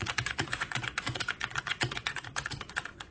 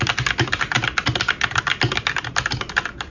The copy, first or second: first